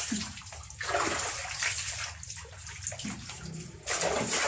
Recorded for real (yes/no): yes